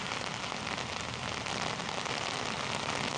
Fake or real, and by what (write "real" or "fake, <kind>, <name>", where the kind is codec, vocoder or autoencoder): real